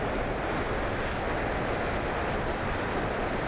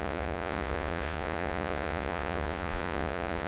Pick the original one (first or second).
first